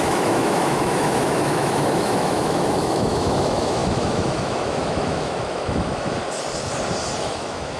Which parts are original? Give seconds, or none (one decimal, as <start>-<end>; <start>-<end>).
6.2-7.2